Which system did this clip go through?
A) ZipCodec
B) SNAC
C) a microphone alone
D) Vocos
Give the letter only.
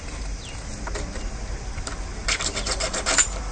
C